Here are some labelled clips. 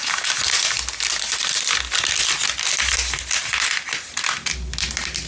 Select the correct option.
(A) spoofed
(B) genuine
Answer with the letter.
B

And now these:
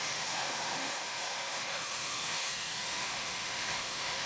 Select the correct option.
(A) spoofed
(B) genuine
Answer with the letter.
A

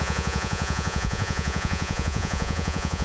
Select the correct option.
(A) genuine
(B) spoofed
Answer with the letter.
B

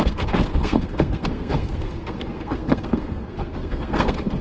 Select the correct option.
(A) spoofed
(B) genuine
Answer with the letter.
A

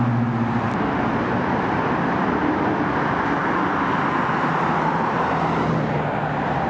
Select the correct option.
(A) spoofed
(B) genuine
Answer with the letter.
B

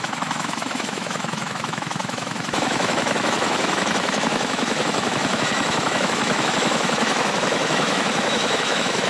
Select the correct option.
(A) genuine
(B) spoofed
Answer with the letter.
B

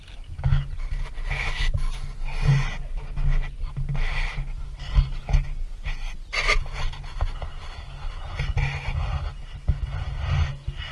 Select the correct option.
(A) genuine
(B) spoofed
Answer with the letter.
A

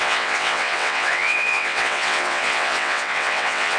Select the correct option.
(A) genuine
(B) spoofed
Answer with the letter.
B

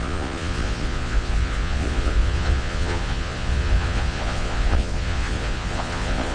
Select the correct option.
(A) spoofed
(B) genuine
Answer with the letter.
A